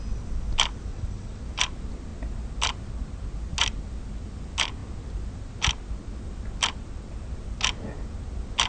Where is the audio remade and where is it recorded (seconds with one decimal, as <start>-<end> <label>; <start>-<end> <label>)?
0.0-0.9 recorded; 0.9-1.4 remade; 1.4-8.7 recorded

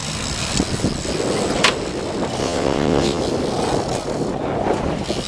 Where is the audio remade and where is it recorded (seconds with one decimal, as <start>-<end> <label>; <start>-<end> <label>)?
0.0-2.4 recorded; 2.4-3.2 remade; 3.2-5.3 recorded

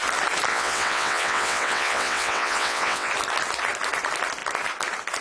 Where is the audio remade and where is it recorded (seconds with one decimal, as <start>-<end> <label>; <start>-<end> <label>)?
0.0-0.5 recorded; 0.5-3.1 remade; 3.1-5.2 recorded

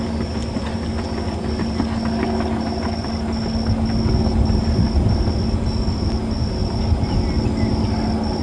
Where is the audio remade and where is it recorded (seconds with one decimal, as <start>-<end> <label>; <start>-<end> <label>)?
0.0-8.4 recorded

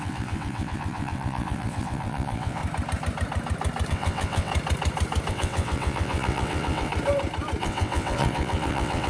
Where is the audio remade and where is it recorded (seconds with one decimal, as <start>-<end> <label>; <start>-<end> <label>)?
0.0-2.6 remade; 2.6-3.9 recorded; 3.9-4.5 remade; 4.5-5.3 recorded; 5.3-6.9 remade; 6.9-7.6 recorded; 7.6-9.1 remade

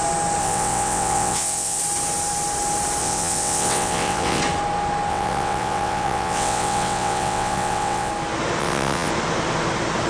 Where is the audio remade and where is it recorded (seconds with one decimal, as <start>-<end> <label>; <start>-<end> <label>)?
0.0-0.4 recorded; 0.4-1.8 remade; 1.8-3.0 recorded; 3.0-4.4 remade; 4.4-5.1 recorded; 5.1-8.1 remade; 8.1-8.6 recorded; 8.6-9.1 remade; 9.1-10.1 recorded

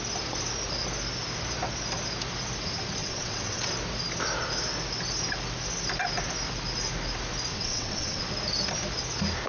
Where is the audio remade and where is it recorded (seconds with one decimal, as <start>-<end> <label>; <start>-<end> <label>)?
0.0-3.0 recorded; 3.0-3.7 remade; 3.7-7.5 recorded; 7.5-8.2 remade; 8.2-9.5 recorded

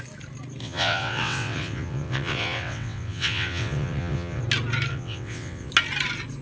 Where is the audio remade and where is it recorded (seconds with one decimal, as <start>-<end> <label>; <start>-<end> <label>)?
0.0-0.6 recorded; 0.6-4.4 remade; 4.4-4.9 recorded; 4.9-5.7 remade; 5.7-6.4 recorded